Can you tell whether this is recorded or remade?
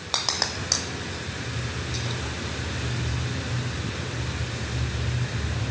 recorded